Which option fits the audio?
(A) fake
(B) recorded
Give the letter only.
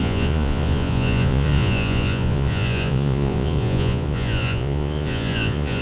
A